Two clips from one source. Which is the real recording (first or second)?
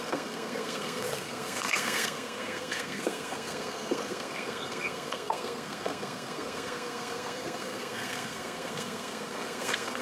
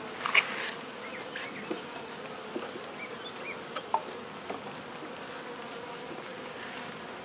second